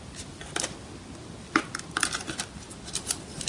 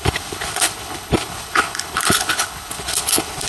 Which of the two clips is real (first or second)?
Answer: first